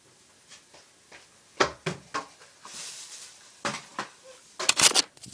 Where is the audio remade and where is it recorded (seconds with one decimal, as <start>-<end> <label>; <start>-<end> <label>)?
0.0-5.3 recorded